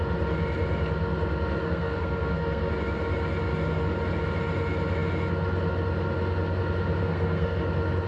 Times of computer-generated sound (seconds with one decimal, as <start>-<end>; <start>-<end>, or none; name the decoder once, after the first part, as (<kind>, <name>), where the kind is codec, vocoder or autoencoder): 1.6-2.7 (codec, SNAC); 7.0-7.6